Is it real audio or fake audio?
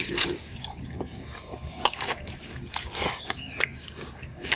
fake